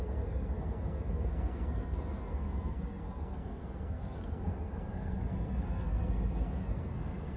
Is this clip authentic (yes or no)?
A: no